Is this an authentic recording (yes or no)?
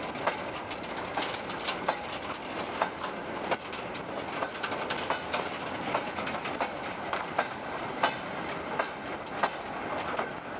yes